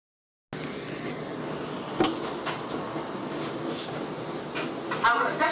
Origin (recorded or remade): recorded